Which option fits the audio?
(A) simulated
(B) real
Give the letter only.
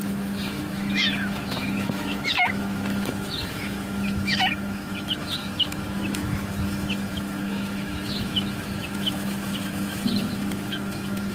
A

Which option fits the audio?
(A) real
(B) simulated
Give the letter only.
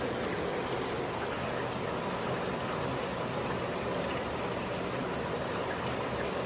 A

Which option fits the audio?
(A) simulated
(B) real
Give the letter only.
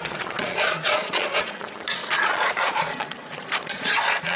A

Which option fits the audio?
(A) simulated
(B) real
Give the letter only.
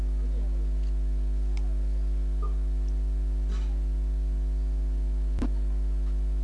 B